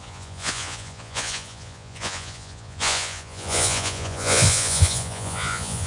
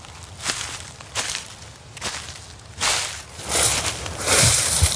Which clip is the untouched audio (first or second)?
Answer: second